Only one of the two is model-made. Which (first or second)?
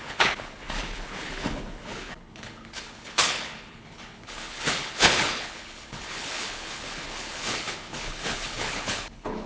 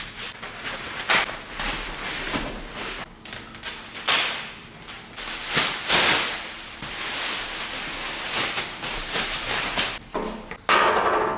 first